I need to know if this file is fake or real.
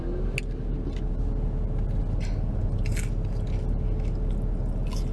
real